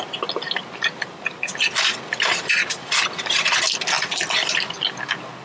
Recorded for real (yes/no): yes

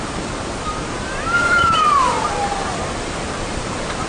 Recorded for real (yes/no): no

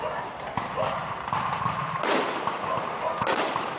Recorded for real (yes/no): no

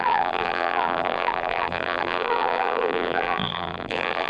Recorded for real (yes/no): no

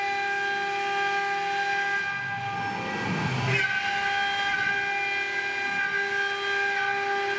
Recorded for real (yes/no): yes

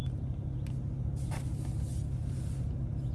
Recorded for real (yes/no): yes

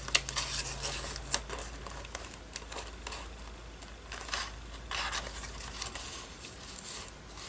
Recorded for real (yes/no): yes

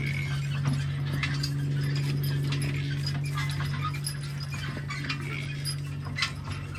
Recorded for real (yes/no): yes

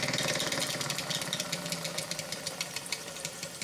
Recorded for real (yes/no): no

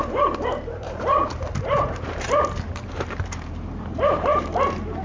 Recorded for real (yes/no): no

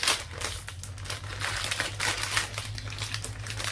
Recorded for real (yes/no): yes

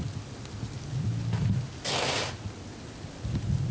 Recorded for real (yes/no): yes